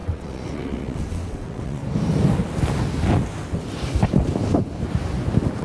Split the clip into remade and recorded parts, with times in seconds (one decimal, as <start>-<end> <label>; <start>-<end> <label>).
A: 0.0-1.8 remade; 1.8-5.6 recorded